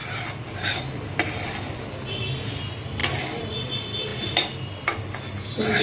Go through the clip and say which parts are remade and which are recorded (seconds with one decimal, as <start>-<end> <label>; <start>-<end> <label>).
0.0-5.8 recorded